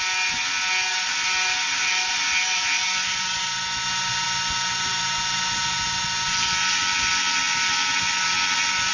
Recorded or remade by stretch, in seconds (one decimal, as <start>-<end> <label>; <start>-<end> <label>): 0.0-0.9 recorded; 0.9-3.4 remade; 3.4-8.9 recorded